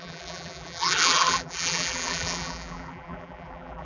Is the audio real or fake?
fake